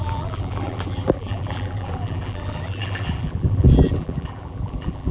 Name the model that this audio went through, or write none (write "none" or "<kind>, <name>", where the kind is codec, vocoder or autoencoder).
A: vocoder, BigVGAN v2